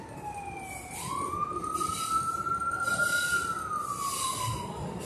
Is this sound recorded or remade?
recorded